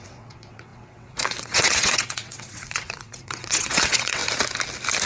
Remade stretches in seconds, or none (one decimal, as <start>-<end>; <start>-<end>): 0.0-4.2